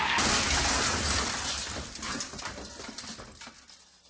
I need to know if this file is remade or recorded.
recorded